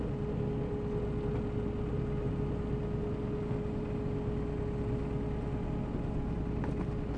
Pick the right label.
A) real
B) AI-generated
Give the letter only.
A